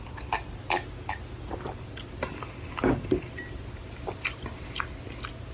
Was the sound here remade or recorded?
recorded